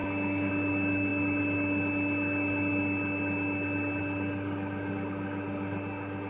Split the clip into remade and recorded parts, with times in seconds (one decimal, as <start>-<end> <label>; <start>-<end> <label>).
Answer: 0.0-0.5 remade; 0.5-6.3 recorded